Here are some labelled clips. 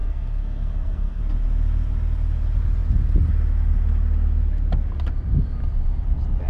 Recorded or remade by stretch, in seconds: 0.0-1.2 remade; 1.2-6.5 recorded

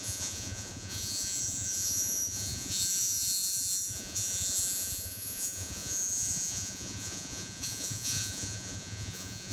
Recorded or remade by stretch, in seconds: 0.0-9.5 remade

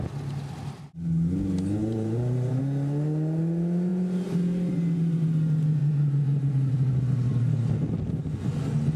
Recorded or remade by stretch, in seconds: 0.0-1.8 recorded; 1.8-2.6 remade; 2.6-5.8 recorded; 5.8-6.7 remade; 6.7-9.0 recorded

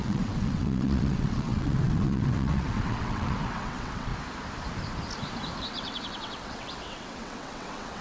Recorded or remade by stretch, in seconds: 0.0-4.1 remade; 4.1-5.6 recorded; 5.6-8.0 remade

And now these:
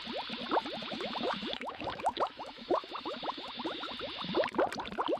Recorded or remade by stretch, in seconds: 0.0-0.8 recorded; 0.8-3.9 remade; 3.9-5.2 recorded

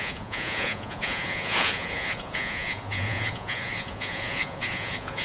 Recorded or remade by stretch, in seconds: 0.0-5.2 remade

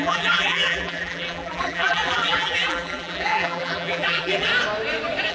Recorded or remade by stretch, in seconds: 0.0-4.5 remade; 4.5-5.3 recorded